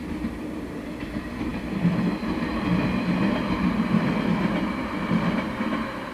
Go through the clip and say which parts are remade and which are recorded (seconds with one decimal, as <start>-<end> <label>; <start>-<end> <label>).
0.0-4.3 recorded; 4.3-6.1 remade